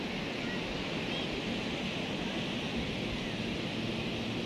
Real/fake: real